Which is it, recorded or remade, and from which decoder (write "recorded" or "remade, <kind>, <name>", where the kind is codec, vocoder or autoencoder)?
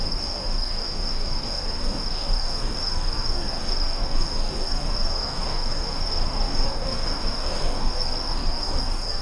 remade, codec, DAC